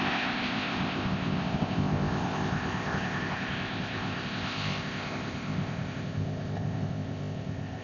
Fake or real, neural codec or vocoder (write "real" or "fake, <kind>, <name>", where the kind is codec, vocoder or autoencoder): fake, codec, ZipCodec